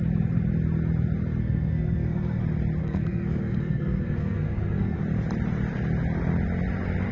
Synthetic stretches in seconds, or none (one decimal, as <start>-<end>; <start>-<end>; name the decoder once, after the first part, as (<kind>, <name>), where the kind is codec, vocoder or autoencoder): 1.4-2.4 (codec, SNAC); 2.8-5.0